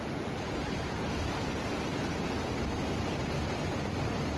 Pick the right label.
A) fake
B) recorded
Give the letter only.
B